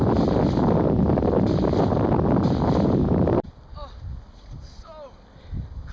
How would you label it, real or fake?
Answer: real